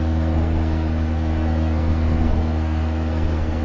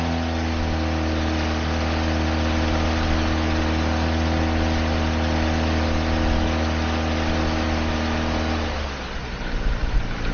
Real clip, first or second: second